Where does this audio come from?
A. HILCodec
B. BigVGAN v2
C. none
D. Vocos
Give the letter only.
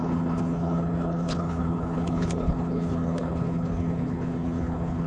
A